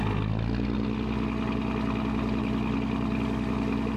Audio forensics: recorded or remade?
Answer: recorded